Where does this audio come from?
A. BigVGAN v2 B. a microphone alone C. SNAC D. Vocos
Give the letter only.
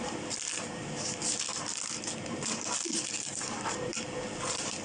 A